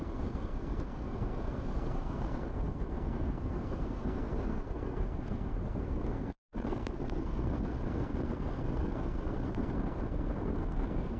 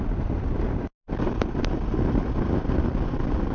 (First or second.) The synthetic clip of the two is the first